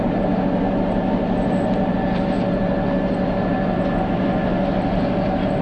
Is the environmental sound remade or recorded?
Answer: recorded